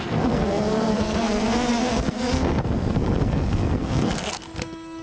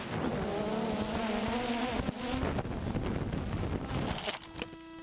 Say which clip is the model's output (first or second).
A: first